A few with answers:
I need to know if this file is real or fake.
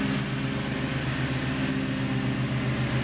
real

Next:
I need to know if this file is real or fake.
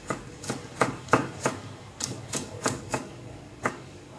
fake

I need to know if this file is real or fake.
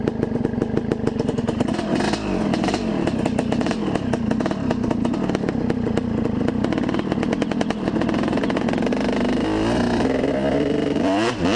real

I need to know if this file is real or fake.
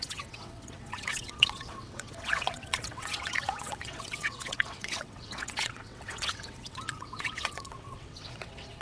fake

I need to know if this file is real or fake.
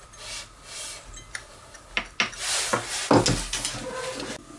real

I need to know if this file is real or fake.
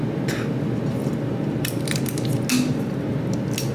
real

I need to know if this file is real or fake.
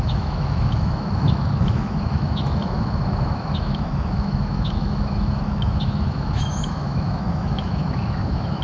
fake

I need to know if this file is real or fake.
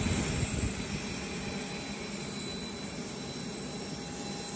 real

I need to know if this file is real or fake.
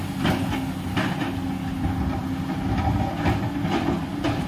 real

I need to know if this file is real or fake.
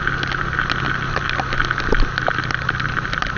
fake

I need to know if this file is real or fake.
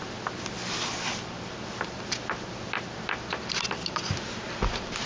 real